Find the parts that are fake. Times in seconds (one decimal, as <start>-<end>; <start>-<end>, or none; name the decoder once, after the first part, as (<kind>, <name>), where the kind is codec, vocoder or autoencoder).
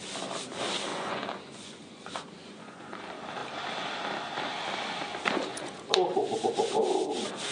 0.9-3.0 (vocoder, Vocos); 5.5-6.8